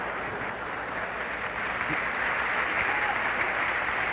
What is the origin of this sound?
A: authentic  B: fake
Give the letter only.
A